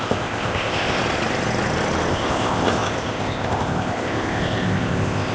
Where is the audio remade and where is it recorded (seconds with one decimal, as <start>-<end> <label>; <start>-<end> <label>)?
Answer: 0.0-1.0 remade; 1.0-2.1 recorded; 2.1-5.3 remade